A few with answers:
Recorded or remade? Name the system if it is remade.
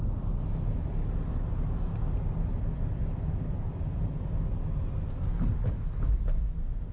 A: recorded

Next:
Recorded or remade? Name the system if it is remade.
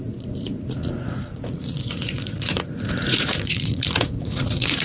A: remade, vocoder, Vocos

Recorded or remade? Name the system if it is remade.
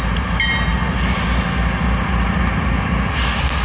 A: recorded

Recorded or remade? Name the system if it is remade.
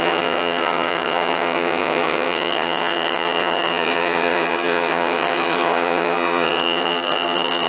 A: remade, vocoder, HiFi-GAN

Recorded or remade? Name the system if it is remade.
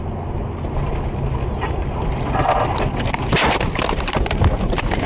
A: remade, vocoder, BigVGAN v2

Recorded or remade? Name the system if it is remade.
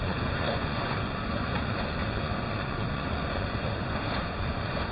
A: remade, vocoder, Vocos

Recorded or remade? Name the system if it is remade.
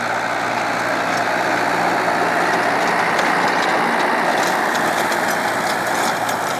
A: recorded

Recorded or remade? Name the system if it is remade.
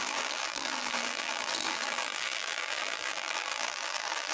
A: remade, vocoder, BigVGAN v2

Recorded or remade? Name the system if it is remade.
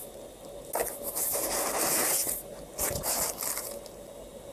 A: recorded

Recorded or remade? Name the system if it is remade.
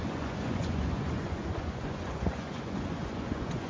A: remade, vocoder, Vocos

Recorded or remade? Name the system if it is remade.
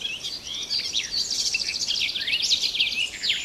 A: recorded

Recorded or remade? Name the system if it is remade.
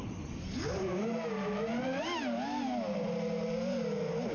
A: recorded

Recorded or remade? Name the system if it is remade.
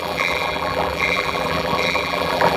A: remade, vocoder, BigVGAN v2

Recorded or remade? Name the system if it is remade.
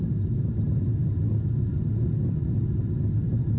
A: recorded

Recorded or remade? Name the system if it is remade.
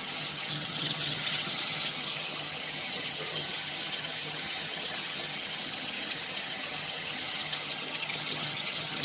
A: remade, vocoder, HiFi-GAN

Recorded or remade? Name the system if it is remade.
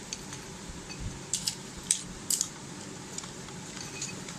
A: remade, vocoder, BigVGAN v2